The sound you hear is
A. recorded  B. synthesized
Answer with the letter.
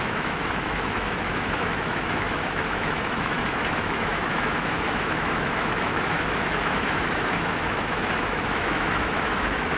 B